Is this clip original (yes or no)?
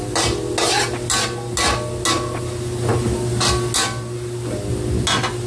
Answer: yes